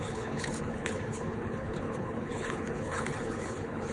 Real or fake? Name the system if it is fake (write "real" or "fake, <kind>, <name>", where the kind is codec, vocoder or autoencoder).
fake, codec, HILCodec